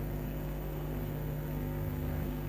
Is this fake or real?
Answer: fake